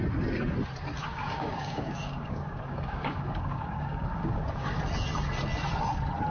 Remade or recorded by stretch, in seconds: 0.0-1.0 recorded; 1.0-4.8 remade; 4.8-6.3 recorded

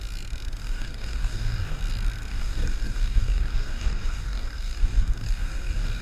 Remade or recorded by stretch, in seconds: 0.0-0.6 recorded; 0.6-1.8 remade; 1.8-2.3 recorded; 2.3-6.0 remade